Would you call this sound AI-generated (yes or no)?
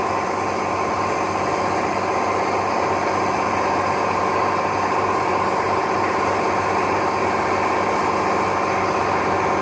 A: no